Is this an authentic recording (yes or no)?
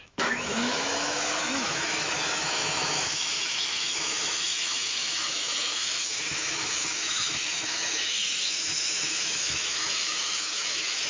no